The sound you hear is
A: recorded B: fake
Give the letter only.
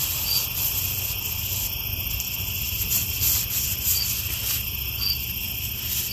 A